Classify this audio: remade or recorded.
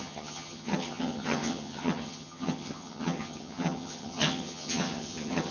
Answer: remade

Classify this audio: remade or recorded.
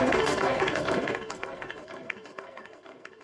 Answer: remade